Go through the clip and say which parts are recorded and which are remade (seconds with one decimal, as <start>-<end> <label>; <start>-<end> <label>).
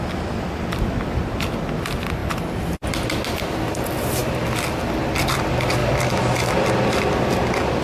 0.0-7.8 recorded